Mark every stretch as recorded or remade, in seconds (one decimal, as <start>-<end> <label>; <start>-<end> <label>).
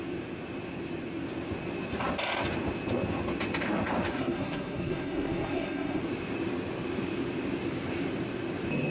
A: 0.0-4.1 recorded; 4.1-6.0 remade; 6.0-8.9 recorded